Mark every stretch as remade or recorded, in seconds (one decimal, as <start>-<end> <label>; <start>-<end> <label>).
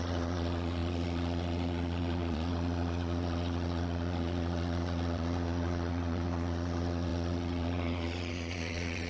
0.0-9.1 remade